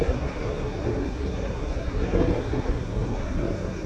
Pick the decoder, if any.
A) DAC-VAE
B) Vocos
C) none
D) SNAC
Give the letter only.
D